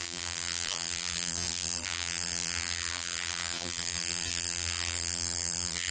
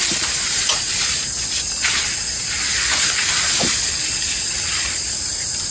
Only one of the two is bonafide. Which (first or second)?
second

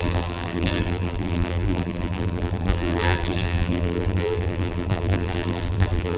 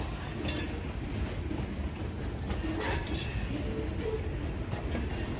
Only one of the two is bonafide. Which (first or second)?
second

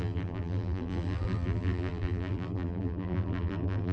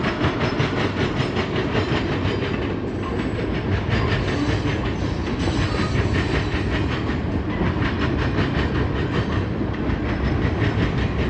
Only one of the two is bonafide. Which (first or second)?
second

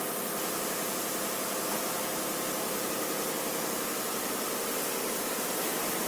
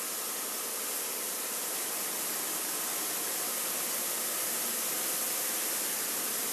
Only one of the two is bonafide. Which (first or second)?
first